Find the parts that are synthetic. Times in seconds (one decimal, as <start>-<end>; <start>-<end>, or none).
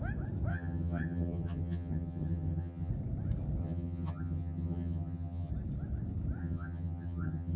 0.5-2.9; 3.6-5.5; 6.4-7.6